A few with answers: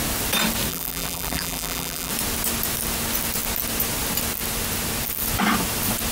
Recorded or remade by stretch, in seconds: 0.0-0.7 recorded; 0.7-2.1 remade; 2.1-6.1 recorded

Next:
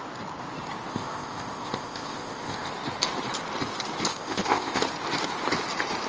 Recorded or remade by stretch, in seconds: 0.0-0.9 recorded; 0.9-2.7 remade; 2.7-4.1 recorded; 4.1-4.8 remade; 4.8-6.1 recorded